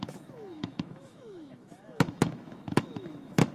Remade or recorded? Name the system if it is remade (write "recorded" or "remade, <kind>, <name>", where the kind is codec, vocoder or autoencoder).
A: remade, autoencoder, DAC-VAE